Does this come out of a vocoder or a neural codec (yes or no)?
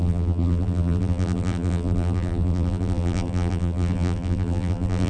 yes